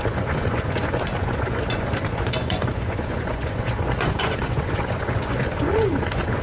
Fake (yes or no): yes